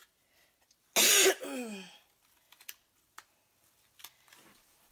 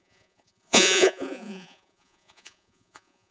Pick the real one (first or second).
first